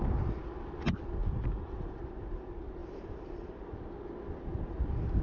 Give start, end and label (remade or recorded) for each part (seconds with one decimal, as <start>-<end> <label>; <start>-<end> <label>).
0.0-1.2 recorded; 1.2-1.8 remade; 1.8-2.8 recorded; 2.8-4.7 remade; 4.7-5.2 recorded